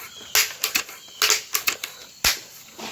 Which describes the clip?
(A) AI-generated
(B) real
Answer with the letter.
B